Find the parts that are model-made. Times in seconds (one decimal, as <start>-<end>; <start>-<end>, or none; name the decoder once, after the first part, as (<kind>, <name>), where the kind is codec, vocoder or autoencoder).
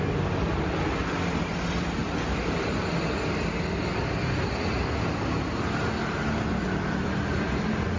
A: none